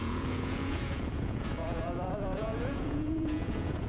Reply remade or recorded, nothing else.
remade